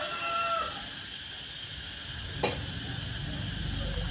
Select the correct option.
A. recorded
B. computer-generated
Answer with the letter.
A